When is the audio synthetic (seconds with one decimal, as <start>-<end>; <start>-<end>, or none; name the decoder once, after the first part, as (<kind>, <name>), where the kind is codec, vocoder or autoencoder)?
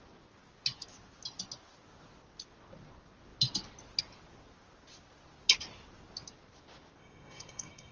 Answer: 7.0-7.9 (codec, SNAC)